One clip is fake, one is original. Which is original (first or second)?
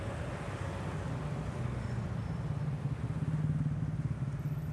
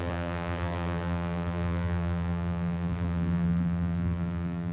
first